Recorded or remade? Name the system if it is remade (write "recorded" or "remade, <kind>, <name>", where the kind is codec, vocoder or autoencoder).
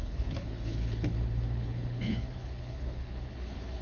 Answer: remade, codec, HILCodec